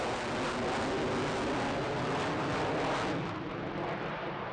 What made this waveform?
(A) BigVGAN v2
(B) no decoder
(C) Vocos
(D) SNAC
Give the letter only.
B